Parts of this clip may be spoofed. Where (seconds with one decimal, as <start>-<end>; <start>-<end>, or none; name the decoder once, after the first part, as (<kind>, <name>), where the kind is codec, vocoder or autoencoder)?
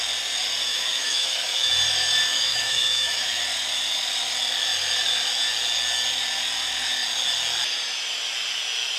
0.7-1.7 (autoencoder, DAC-VAE); 2.3-3.4